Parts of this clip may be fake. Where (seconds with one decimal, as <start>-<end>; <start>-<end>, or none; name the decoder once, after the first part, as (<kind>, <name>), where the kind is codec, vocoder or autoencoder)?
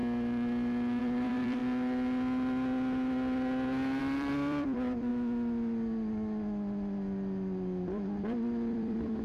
1.0-1.6 (vocoder, BigVGAN v2); 4.0-5.1; 8.7-9.2